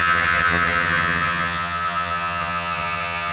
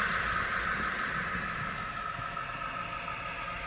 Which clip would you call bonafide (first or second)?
second